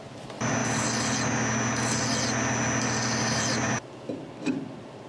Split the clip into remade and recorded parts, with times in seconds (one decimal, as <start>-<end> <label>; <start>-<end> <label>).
0.0-0.6 remade; 0.6-3.7 recorded; 3.7-5.1 remade